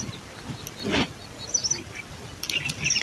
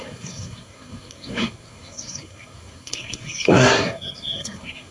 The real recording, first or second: first